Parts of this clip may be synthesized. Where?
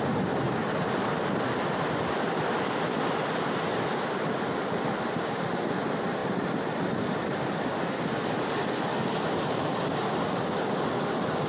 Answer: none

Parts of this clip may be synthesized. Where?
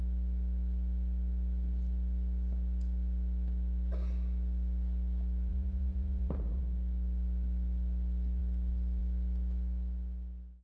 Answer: 5.5-6.6 (vocoder, Vocos)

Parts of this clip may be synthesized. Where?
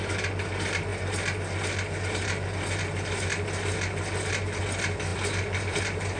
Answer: 5.1-5.8 (vocoder, BigVGAN v2)